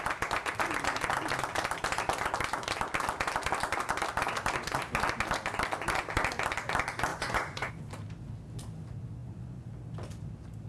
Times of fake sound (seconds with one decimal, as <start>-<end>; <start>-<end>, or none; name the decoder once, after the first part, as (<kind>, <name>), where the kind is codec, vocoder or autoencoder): 7.1-7.7 (vocoder, Vocos); 9.2-9.7